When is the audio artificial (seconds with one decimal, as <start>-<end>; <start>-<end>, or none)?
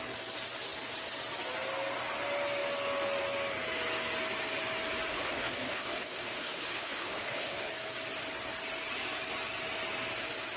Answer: 5.1-7.7